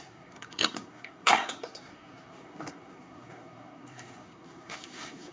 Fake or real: fake